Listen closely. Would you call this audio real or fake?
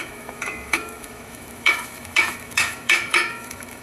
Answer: fake